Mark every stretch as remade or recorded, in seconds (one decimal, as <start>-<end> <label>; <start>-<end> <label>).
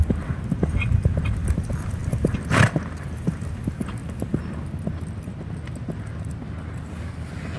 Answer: 0.0-7.6 recorded